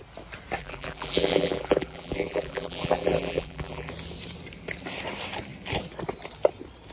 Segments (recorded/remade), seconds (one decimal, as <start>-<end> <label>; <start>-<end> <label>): 0.0-0.6 recorded; 0.6-3.9 remade; 3.9-6.9 recorded